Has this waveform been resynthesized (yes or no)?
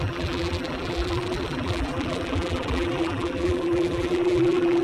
yes